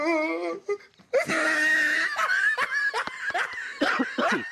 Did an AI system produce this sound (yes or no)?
no